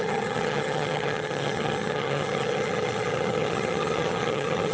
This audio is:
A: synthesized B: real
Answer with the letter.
A